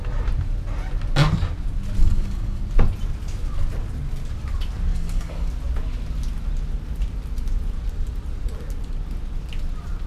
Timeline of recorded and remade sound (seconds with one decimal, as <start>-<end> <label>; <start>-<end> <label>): 0.0-2.0 recorded; 2.0-2.6 remade; 2.6-4.9 recorded; 4.9-5.5 remade; 5.5-10.1 recorded